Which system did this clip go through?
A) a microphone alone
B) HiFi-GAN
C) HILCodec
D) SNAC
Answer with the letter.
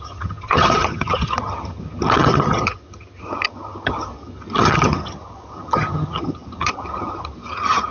B